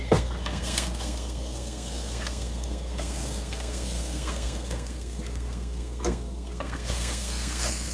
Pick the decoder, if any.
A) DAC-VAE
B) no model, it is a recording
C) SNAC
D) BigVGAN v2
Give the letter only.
C